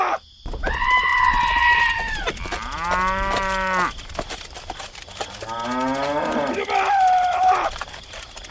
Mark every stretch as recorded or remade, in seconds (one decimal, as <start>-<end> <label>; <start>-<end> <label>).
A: 0.0-8.5 recorded